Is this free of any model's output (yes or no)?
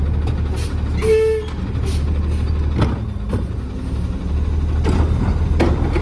yes